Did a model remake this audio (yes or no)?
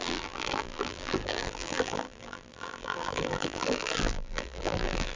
yes